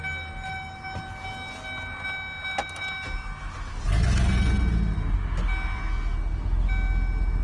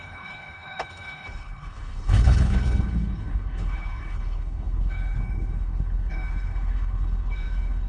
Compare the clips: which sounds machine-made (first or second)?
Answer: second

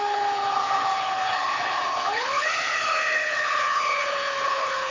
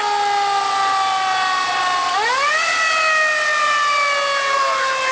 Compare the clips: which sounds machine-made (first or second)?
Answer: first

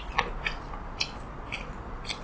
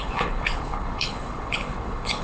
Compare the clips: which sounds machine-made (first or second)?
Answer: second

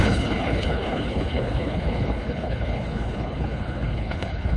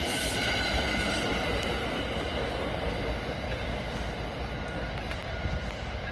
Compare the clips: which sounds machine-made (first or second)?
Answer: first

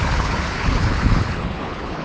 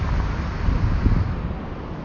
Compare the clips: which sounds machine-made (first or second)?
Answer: first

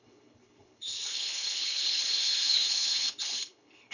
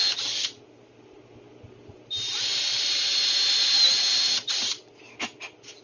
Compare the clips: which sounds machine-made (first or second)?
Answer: first